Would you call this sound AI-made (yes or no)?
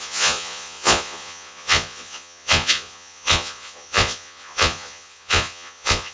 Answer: yes